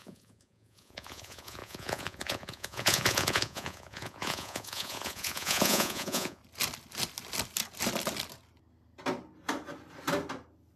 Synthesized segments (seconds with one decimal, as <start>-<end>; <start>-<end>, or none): 0.0-6.4